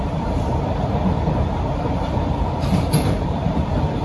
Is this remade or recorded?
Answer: remade